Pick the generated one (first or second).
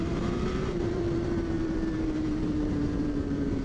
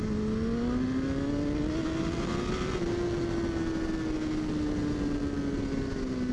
first